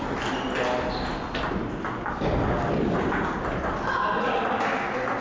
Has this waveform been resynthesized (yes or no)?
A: no